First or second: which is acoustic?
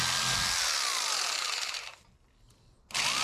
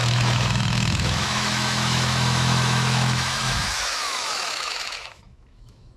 first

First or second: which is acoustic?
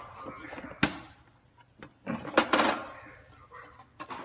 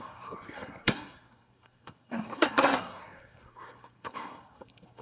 first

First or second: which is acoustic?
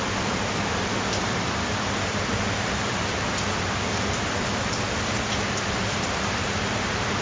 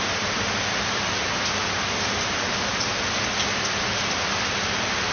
second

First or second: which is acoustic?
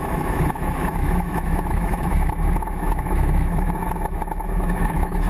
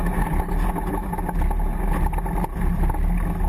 second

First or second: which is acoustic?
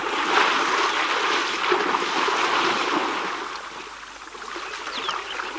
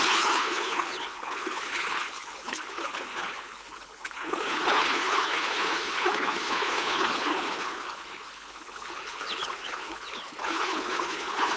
first